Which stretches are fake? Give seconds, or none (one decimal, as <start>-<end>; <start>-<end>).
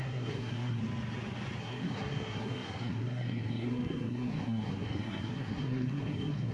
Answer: 0.0-0.8; 1.6-6.5